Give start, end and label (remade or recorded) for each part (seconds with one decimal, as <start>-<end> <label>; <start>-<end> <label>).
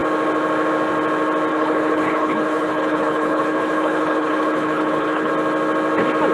0.0-1.5 recorded; 1.5-5.3 remade; 5.3-6.3 recorded